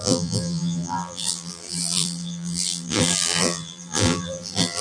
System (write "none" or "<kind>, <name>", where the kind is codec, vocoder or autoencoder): vocoder, BigVGAN v2